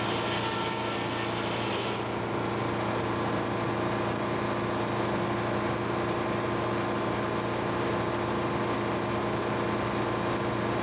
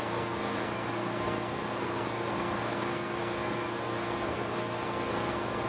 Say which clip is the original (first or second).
first